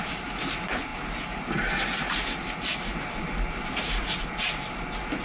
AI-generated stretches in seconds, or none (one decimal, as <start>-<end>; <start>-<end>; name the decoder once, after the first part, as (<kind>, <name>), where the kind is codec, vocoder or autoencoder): none